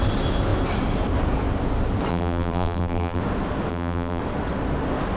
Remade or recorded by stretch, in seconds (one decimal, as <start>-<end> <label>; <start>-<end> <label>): 0.0-2.1 recorded; 2.1-3.2 remade; 3.2-3.7 recorded; 3.7-4.2 remade; 4.2-5.2 recorded